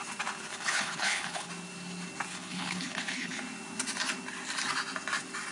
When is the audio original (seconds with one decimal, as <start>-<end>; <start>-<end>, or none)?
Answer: 0.0-0.5; 1.5-2.3; 3.4-5.5